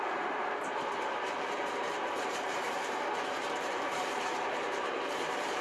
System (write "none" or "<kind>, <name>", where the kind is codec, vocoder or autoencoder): vocoder, BigVGAN v2